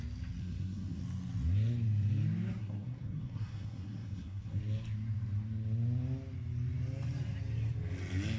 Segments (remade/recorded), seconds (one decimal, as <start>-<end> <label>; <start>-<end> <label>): 0.0-0.4 recorded; 0.4-1.0 remade; 1.0-2.6 recorded; 2.6-4.6 remade; 4.6-8.4 recorded